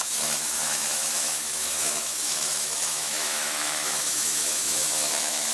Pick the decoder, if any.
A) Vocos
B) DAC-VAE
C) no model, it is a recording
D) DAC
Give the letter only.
B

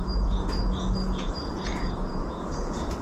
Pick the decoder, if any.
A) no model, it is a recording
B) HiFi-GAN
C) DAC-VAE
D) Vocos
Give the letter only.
D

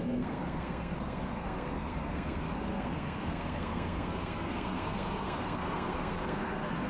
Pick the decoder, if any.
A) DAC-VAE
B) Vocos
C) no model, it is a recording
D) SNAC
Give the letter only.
D